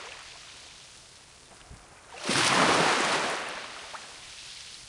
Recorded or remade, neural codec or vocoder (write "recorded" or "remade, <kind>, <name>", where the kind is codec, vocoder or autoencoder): recorded